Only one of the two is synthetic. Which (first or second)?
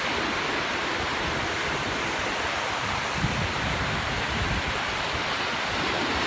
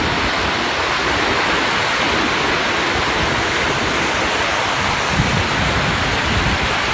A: first